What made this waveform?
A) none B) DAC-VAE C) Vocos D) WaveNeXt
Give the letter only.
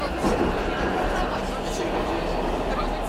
A